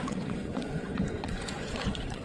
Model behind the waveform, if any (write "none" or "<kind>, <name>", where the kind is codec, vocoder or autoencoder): vocoder, Vocos